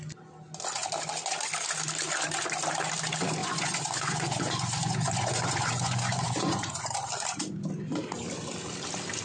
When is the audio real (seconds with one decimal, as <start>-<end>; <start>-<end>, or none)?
0.0-3.4; 6.8-9.2